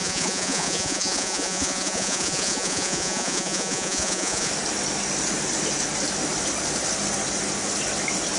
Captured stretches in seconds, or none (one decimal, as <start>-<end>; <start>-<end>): 4.5-8.4